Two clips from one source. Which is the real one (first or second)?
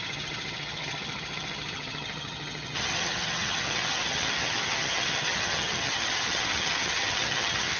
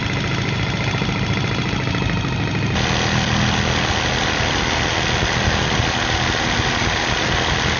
second